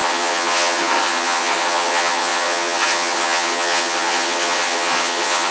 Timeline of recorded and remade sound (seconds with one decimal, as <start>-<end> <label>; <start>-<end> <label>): 0.0-5.5 remade